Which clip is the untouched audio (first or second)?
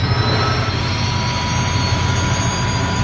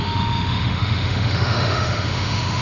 first